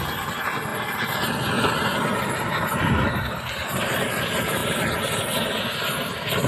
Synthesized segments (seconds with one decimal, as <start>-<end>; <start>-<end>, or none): none